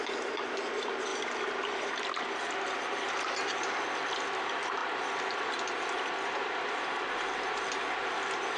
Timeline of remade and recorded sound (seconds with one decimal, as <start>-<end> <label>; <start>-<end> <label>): 0.0-8.6 recorded